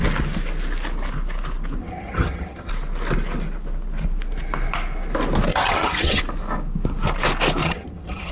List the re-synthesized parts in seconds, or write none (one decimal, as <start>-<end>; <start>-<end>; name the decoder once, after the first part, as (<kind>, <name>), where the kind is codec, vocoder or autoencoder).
1.8-2.7 (vocoder, HiFi-GAN); 5.5-6.2; 7.6-8.3